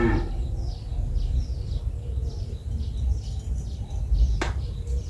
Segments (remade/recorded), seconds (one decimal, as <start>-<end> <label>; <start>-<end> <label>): 0.0-5.1 recorded